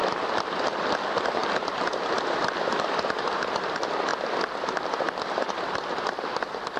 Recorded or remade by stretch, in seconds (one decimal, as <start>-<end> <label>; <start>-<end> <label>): 0.0-0.8 recorded; 0.8-1.4 remade; 1.4-2.2 recorded; 2.2-4.1 remade; 4.1-4.8 recorded; 4.8-6.8 remade